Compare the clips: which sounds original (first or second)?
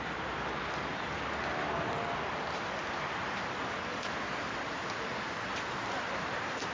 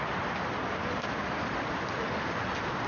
first